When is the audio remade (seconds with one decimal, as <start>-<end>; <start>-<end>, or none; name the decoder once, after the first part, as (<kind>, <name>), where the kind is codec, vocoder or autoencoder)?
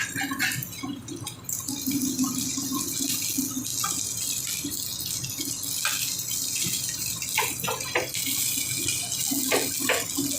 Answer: 0.6-2.0 (vocoder, BigVGAN v2)